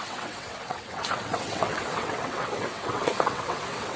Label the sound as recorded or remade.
remade